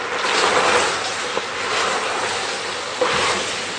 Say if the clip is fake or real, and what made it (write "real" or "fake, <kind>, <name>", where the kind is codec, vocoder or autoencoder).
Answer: real